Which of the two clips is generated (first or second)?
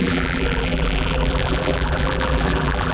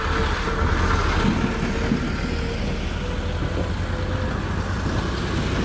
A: first